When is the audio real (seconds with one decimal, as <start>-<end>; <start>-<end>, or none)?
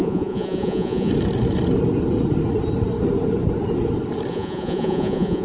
1.1-4.3